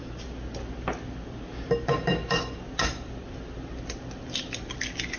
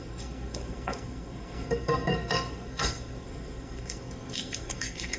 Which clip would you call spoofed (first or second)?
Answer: second